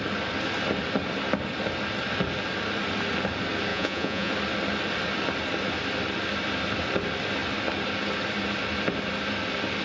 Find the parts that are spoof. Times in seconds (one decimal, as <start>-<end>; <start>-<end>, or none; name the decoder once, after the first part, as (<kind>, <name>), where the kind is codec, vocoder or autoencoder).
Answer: 3.7-4.3 (vocoder, Vocos)